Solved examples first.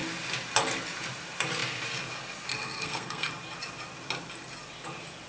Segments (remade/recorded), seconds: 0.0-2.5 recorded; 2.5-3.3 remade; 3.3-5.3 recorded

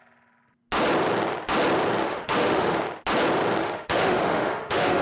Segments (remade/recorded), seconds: 0.0-2.0 recorded; 2.0-2.8 remade; 2.8-3.6 recorded; 3.6-5.0 remade

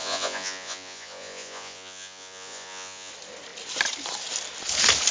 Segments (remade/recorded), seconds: 0.0-3.1 remade; 3.1-5.1 recorded